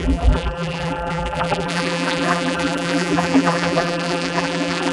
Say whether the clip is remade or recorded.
remade